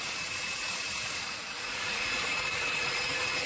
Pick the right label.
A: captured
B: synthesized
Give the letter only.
B